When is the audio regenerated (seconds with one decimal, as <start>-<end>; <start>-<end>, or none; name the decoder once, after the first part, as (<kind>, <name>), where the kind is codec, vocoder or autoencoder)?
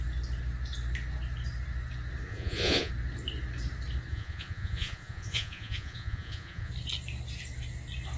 2.3-2.9 (vocoder, Vocos); 4.1-6.7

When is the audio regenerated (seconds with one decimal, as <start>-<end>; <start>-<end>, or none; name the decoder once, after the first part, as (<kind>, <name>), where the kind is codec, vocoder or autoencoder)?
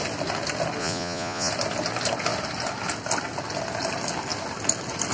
0.8-1.5 (vocoder, Vocos)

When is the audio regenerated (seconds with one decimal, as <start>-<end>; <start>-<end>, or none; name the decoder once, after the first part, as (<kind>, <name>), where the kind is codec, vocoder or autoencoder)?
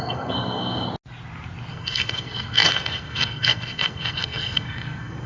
0.0-0.9 (codec, SNAC); 1.7-5.3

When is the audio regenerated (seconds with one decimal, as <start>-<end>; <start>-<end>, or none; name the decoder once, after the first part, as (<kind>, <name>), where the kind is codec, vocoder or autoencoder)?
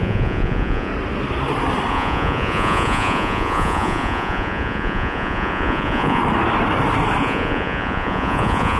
0.0-0.9 (vocoder, Vocos); 1.9-6.2; 7.2-8.8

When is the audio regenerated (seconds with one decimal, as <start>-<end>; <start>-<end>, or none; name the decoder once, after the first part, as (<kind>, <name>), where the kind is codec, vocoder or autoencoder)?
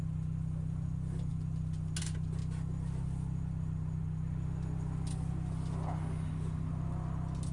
none